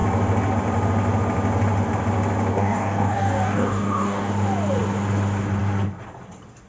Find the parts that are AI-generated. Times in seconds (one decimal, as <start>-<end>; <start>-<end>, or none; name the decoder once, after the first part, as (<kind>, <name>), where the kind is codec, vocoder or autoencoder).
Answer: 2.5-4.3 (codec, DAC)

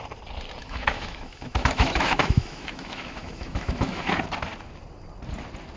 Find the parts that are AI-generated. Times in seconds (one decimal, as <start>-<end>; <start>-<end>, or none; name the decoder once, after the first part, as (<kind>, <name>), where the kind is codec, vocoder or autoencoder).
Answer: 0.6-4.1 (autoencoder, DAC-VAE)

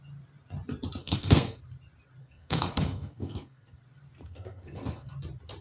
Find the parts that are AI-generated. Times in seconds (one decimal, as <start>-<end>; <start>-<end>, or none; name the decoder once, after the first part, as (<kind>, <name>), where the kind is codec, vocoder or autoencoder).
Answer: 1.0-1.6 (codec, SNAC); 2.2-3.8; 4.2-5.1

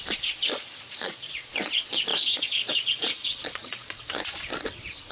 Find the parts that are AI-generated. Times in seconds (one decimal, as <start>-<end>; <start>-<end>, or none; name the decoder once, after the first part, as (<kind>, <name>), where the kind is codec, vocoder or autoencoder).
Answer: 0.0-5.1 (vocoder, Vocos)

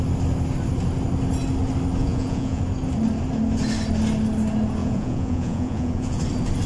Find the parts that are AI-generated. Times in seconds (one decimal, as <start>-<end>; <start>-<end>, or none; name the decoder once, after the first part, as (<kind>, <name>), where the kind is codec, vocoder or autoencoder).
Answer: 2.0-2.6 (vocoder, Vocos); 4.8-6.2

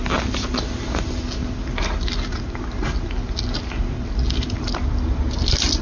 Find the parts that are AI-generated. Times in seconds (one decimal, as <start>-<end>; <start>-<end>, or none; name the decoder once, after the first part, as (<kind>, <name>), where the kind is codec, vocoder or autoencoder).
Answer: none

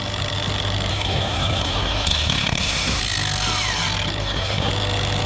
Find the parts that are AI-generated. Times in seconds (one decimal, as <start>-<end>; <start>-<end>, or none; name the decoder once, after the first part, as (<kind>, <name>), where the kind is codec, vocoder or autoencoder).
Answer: 0.9-3.0 (codec, SNAC); 4.2-4.7